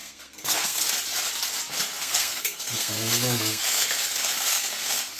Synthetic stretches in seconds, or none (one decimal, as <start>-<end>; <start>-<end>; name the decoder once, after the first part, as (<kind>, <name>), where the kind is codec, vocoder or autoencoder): 0.0-0.9 (codec, SNAC); 1.8-5.2